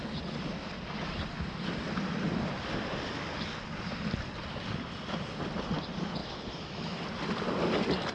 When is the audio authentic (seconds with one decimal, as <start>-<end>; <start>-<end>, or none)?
0.0-6.2; 7.0-8.1